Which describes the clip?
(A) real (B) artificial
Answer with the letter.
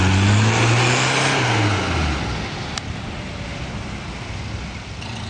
A